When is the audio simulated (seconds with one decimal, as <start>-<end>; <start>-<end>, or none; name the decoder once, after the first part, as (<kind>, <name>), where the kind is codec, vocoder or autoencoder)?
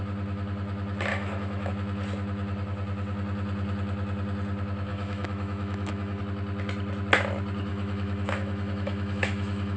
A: 1.1-1.7 (autoencoder, DAC-VAE); 4.9-6.2; 7.7-9.8